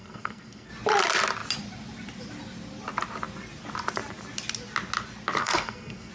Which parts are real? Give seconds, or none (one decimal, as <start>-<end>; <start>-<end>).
0.7-5.4

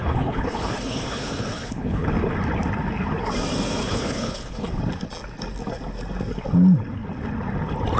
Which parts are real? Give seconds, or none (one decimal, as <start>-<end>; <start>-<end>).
2.1-3.8; 4.8-8.0

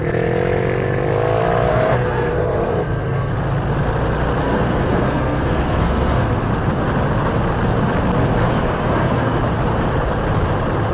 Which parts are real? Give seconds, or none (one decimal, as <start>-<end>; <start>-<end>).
0.0-1.7; 3.3-4.4; 6.5-8.4; 9.4-10.9

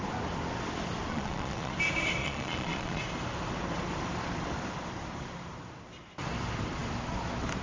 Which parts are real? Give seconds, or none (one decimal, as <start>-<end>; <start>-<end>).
0.0-1.1; 1.7-2.2; 3.0-7.6